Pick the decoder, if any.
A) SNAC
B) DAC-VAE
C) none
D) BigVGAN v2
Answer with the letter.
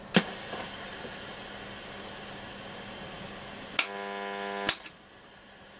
C